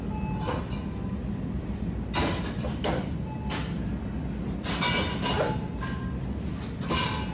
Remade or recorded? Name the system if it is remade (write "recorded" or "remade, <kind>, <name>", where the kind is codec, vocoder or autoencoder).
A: recorded